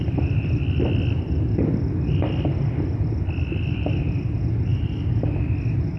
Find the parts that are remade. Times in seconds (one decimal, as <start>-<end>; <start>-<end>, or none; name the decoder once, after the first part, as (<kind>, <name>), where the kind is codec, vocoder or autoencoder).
none